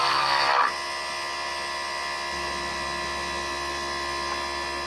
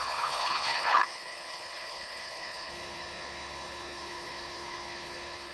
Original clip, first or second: first